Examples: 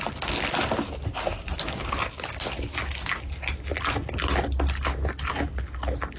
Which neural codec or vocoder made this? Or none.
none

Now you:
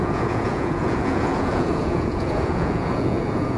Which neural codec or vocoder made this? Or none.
vocoder, Vocos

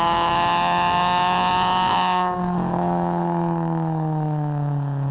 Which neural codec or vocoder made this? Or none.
codec, DAC